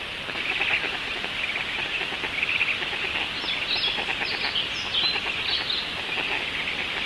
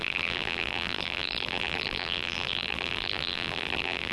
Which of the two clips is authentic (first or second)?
first